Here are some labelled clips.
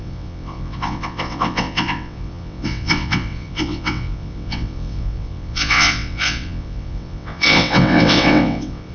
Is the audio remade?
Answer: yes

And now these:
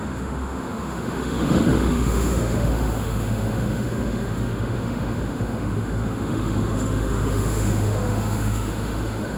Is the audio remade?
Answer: yes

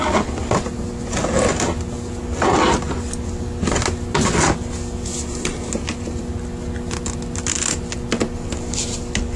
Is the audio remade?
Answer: no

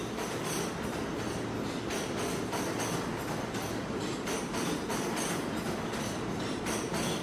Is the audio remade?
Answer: no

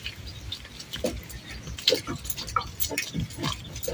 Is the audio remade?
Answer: no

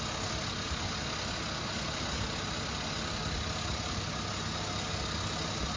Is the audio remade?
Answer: no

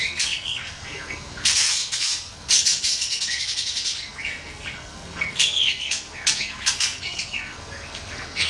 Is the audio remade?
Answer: yes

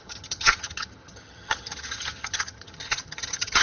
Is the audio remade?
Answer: yes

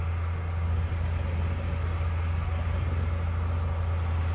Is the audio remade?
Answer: no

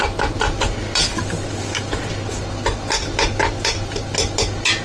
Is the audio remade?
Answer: no